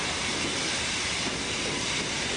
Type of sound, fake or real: real